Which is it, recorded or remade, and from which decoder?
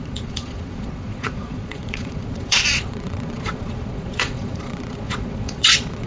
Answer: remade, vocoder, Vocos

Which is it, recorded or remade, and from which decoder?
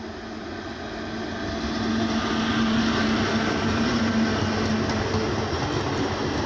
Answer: recorded